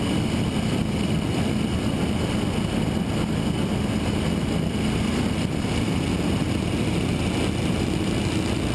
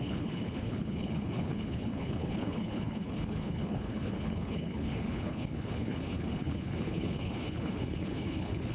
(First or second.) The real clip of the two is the first